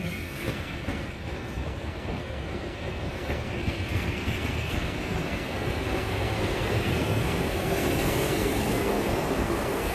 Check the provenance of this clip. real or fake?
fake